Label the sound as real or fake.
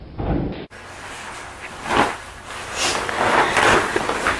real